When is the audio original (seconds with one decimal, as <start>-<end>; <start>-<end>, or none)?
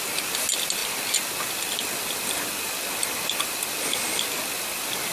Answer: 0.0-5.1